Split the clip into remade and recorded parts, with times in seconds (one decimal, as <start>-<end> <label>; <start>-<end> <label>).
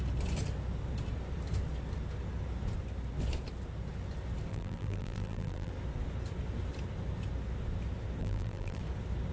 0.0-4.5 recorded; 4.5-5.7 remade; 5.7-8.2 recorded; 8.2-8.8 remade; 8.8-9.3 recorded